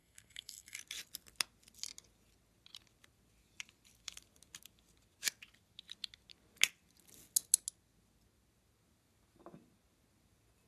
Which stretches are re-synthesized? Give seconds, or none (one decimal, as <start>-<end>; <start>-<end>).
0.0-0.8